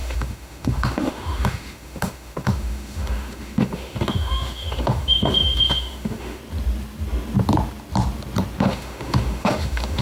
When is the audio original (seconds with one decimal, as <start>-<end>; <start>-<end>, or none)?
6.4-8.6